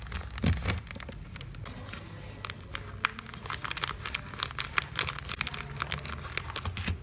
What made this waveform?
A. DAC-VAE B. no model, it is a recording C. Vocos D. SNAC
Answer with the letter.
B